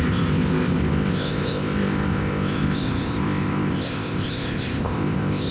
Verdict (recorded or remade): remade